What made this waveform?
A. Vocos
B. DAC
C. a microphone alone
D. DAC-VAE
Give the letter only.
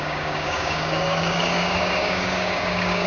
B